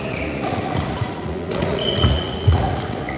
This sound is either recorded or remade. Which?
remade